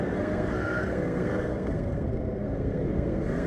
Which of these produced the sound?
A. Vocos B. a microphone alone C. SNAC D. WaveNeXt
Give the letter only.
C